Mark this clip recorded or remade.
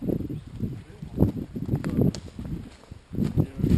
recorded